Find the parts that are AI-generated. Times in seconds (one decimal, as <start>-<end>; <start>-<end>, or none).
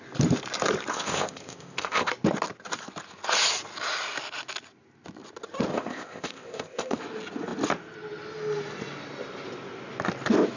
0.9-2.1; 5.7-7.0